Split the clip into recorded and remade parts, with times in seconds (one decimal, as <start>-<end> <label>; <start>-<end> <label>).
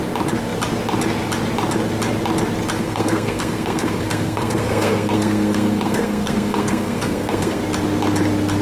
0.0-2.8 recorded; 2.8-7.6 remade; 7.6-8.6 recorded